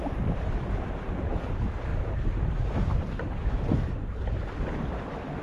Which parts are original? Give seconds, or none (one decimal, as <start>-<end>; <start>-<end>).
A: 0.0-5.4